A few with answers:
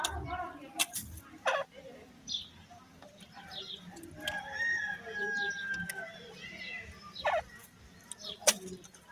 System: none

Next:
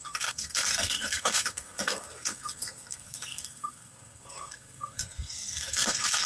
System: codec, SNAC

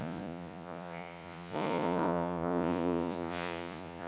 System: vocoder, Vocos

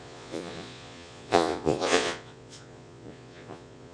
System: vocoder, Vocos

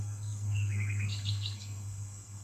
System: codec, SNAC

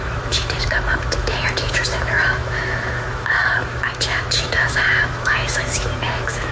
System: autoencoder, DAC-VAE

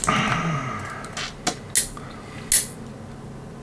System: none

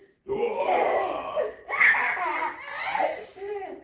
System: none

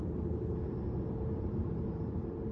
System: none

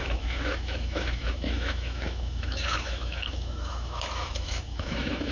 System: autoencoder, DAC-VAE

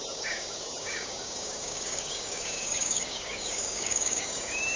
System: codec, DAC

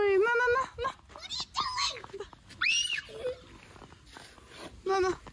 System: none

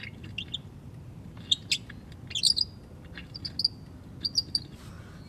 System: none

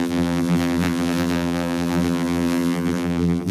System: vocoder, BigVGAN v2